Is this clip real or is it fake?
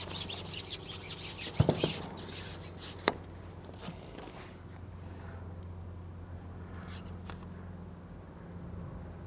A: real